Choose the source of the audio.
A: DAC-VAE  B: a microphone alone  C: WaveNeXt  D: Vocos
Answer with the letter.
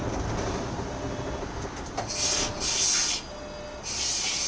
B